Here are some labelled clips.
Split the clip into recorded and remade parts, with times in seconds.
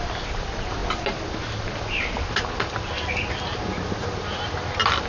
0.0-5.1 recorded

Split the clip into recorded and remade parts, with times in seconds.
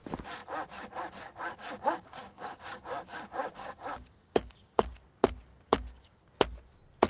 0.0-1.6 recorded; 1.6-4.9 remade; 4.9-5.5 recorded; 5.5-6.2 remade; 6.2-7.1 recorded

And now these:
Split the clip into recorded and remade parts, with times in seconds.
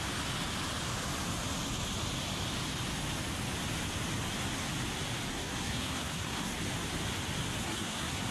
0.0-5.3 recorded; 5.3-6.6 remade; 6.6-7.6 recorded; 7.6-8.3 remade